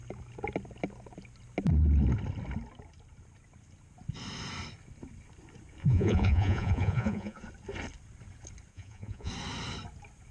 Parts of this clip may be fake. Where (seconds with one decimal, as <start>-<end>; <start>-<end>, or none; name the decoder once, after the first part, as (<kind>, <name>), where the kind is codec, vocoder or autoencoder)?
5.8-7.4 (vocoder, Vocos); 8.7-9.3